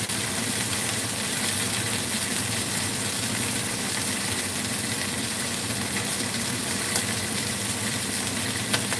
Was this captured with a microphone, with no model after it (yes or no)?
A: yes